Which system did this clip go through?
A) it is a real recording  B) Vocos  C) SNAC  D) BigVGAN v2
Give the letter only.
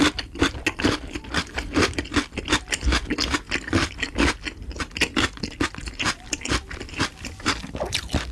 A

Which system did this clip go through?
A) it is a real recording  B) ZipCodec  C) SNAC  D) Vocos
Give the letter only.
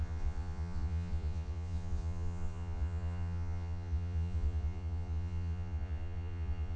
D